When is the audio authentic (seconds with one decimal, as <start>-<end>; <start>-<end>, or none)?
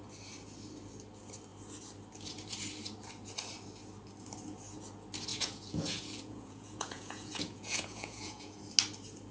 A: 0.0-5.3; 8.6-9.3